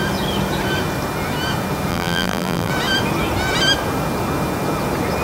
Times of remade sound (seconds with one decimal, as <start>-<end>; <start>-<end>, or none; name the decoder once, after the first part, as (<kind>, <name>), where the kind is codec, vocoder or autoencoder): 1.9-2.7 (vocoder, BigVGAN v2)